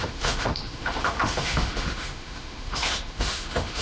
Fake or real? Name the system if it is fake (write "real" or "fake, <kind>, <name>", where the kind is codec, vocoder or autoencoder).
fake, autoencoder, DAC-VAE